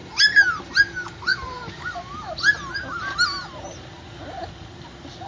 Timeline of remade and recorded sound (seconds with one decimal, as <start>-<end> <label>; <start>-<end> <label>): 0.0-5.3 recorded